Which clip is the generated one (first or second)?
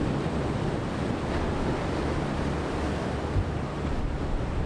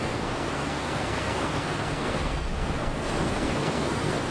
second